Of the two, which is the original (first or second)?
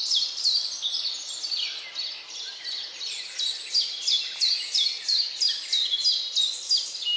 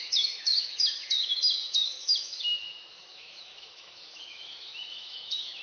first